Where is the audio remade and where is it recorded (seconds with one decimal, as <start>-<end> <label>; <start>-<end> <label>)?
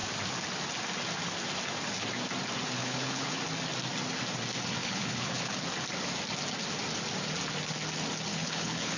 0.0-2.8 recorded; 2.8-3.4 remade; 3.4-4.8 recorded; 4.8-5.6 remade; 5.6-8.3 recorded; 8.3-9.0 remade